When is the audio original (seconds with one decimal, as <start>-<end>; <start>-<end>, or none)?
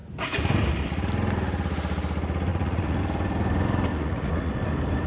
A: 0.0-2.5; 3.0-3.9; 4.5-5.1